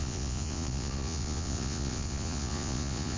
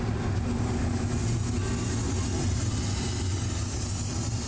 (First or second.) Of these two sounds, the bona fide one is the second